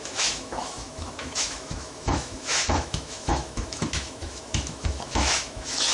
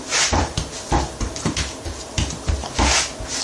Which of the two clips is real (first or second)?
second